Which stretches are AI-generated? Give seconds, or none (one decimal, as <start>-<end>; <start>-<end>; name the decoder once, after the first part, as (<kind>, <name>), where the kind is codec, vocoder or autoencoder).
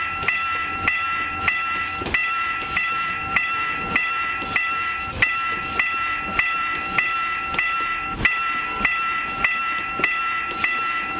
none